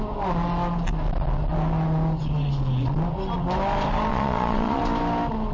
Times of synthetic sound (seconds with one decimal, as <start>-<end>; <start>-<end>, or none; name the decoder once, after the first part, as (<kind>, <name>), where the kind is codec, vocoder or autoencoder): 4.1-4.8 (vocoder, Vocos)